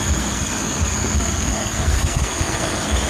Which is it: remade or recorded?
remade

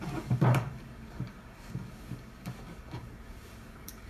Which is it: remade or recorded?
remade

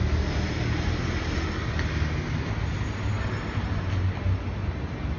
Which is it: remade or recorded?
recorded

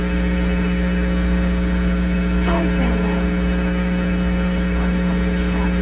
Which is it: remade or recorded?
remade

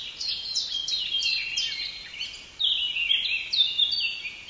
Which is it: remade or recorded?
recorded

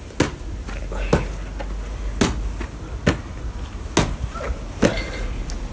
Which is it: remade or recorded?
recorded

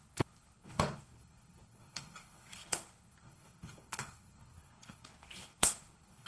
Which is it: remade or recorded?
remade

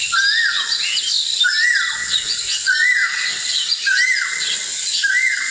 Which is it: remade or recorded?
recorded